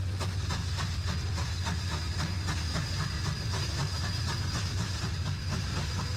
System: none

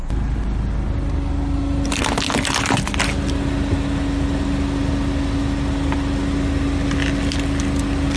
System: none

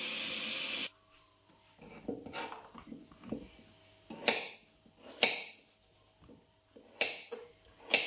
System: none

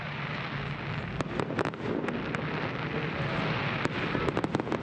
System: none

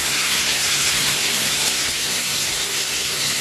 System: codec, SNAC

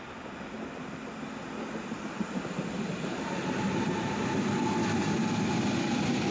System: none